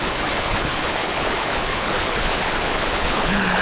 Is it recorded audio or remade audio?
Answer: remade